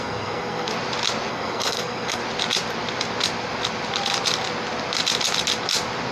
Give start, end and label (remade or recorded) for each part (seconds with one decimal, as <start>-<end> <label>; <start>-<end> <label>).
0.0-0.7 remade; 0.7-1.3 recorded; 1.3-2.2 remade; 2.2-6.1 recorded